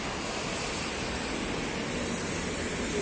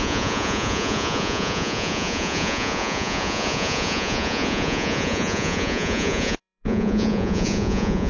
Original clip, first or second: first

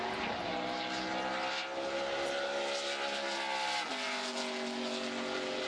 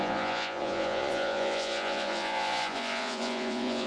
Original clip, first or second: first